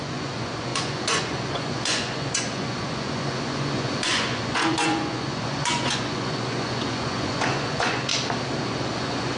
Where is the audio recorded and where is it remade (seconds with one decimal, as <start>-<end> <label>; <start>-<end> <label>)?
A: 0.0-8.1 remade; 8.1-8.6 recorded; 8.6-9.4 remade